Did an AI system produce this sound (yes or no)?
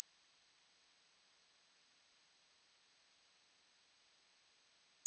no